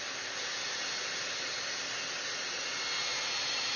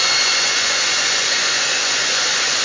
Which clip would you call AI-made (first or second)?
second